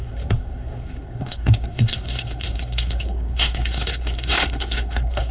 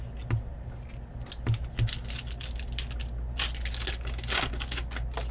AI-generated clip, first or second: first